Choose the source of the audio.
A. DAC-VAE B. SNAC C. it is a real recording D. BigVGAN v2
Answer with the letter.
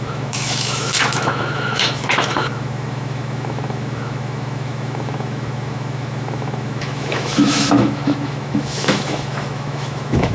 A